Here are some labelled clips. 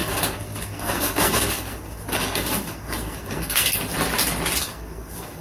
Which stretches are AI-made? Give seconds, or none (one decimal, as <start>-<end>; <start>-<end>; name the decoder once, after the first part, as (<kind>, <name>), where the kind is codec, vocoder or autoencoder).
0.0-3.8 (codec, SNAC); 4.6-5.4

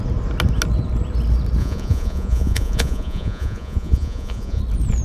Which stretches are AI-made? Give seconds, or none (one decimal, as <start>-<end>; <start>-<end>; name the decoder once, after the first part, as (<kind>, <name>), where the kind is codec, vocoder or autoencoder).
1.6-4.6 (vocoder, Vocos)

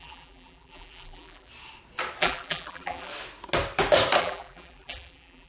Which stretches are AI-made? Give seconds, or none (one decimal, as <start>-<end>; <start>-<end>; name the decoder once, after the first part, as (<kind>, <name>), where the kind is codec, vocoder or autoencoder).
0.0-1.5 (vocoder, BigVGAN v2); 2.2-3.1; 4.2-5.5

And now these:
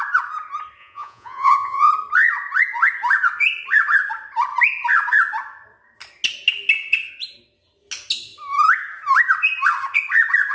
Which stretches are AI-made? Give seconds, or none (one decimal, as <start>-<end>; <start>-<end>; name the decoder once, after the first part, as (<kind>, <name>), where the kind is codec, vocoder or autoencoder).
0.8-1.9 (vocoder, Vocos)

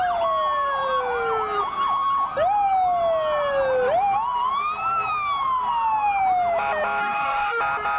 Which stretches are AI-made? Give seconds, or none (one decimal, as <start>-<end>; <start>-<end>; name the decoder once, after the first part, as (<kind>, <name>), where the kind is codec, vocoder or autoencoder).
7.0-7.6 (codec, DAC)

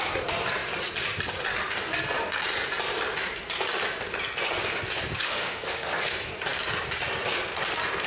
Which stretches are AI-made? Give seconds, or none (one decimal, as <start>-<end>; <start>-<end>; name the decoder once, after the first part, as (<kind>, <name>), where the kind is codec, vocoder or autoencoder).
5.2-6.0 (autoencoder, DAC-VAE)